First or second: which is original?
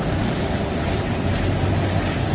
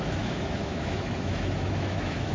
first